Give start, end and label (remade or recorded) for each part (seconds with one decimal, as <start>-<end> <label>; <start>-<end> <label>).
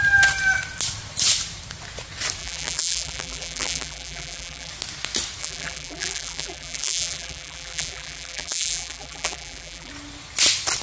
0.0-2.4 recorded; 2.4-4.7 remade; 4.7-5.4 recorded; 5.4-9.9 remade; 9.9-10.8 recorded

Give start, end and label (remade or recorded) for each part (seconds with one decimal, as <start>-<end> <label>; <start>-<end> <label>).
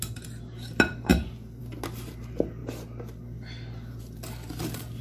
0.0-5.0 recorded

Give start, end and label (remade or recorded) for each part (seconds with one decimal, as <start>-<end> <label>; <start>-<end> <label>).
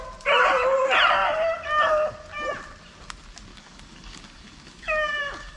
0.0-3.5 recorded; 3.5-5.6 remade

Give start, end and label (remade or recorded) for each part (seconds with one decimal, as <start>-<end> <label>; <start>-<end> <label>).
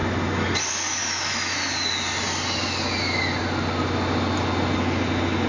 0.0-1.0 recorded; 1.0-1.7 remade; 1.7-5.5 recorded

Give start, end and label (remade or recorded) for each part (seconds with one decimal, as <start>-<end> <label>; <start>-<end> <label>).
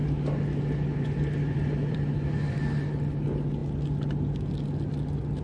0.0-2.9 remade; 2.9-5.4 recorded